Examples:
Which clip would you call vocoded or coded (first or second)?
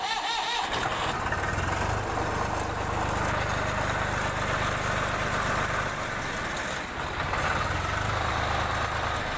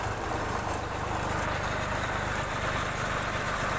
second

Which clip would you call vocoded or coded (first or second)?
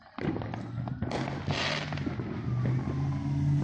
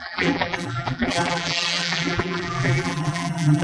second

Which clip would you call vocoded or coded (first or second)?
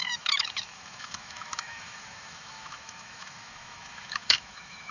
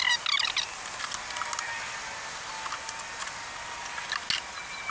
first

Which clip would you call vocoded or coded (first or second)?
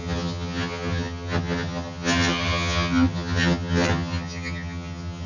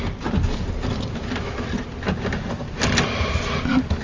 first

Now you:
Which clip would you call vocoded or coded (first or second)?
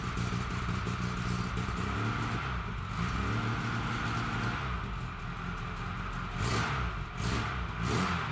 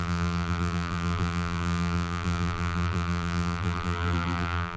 second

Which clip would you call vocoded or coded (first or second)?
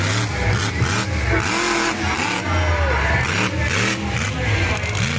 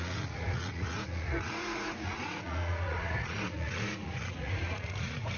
second